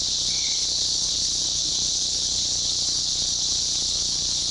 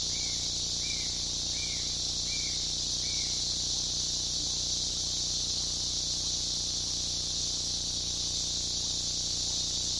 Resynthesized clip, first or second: first